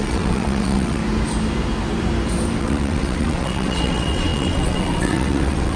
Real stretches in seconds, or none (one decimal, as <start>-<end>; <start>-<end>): 1.0-2.6